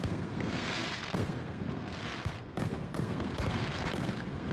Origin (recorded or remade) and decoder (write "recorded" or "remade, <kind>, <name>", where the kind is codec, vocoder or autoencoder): remade, codec, SNAC